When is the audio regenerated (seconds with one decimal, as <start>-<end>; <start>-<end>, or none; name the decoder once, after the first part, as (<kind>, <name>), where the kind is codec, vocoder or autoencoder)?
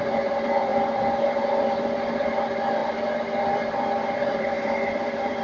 0.0-2.8 (vocoder, BigVGAN v2); 3.5-5.4